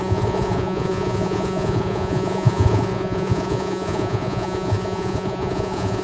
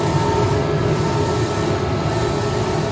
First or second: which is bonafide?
second